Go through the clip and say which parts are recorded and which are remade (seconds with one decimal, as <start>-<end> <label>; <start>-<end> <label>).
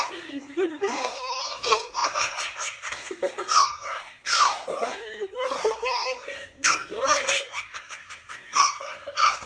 0.0-9.5 remade